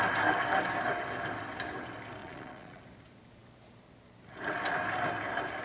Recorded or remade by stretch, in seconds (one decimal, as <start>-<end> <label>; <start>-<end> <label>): 0.0-2.2 recorded; 2.2-2.8 remade; 2.8-5.6 recorded